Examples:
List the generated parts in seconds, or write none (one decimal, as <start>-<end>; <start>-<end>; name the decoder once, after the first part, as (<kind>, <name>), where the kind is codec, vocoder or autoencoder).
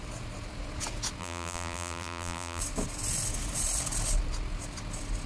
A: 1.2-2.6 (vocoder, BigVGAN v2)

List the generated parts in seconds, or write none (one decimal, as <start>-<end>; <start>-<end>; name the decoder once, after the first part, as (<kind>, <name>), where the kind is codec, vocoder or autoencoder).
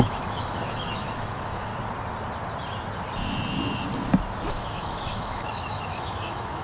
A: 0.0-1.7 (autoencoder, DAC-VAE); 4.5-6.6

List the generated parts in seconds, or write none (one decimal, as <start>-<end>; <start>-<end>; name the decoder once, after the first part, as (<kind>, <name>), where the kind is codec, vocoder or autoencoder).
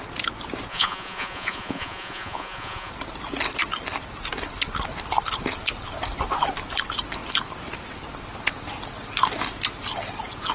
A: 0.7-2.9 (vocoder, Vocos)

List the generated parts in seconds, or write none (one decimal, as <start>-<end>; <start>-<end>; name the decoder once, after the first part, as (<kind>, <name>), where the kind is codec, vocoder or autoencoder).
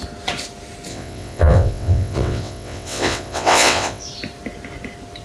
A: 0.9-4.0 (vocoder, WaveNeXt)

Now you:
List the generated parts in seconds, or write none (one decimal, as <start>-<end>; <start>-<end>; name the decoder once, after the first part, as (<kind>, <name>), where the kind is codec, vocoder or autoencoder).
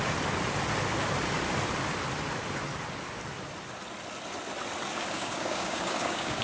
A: 4.9-6.4 (codec, DAC)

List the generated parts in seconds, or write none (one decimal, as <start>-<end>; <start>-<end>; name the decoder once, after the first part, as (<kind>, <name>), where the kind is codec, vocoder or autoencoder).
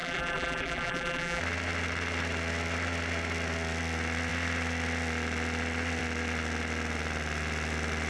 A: 0.0-1.4 (vocoder, BigVGAN v2)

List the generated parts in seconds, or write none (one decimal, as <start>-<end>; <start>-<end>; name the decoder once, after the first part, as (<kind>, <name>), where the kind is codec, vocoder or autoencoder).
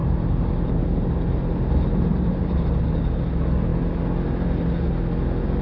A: 0.0-2.9 (vocoder, BigVGAN v2)